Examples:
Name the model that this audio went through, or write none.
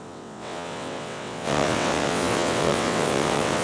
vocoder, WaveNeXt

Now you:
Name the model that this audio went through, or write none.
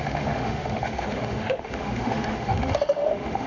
autoencoder, DAC-VAE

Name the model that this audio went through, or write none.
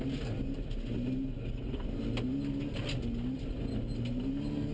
none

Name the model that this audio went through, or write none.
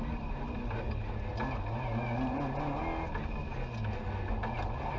none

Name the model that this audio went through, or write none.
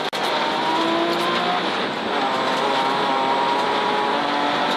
none